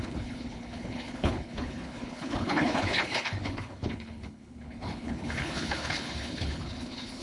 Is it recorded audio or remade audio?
remade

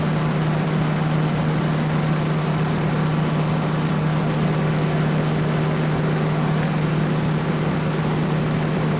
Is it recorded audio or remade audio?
recorded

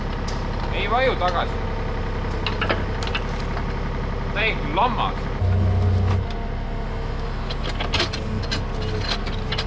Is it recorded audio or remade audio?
recorded